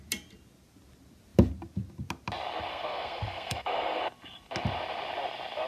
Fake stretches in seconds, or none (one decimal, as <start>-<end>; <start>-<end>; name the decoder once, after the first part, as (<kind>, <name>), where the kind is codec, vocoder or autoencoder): 2.7-4.0 (codec, SNAC)